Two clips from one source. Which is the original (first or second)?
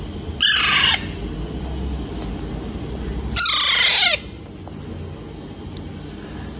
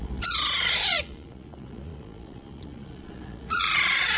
first